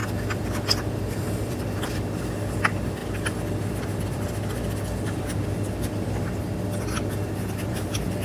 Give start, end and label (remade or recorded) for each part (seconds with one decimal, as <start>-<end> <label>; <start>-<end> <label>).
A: 0.0-8.2 recorded